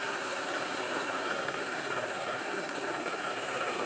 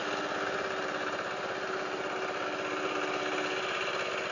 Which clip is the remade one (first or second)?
first